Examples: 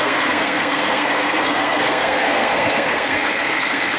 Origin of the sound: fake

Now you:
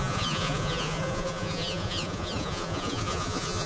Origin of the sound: fake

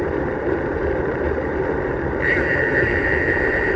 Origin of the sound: fake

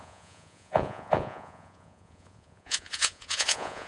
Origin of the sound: fake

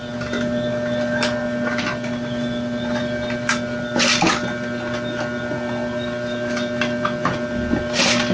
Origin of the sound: real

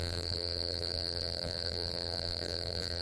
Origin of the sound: fake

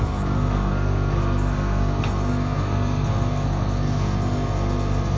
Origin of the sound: fake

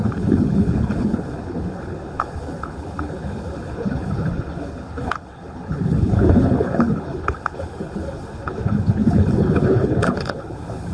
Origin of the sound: fake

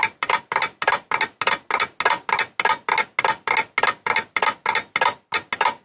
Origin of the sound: real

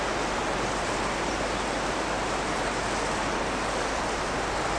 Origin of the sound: real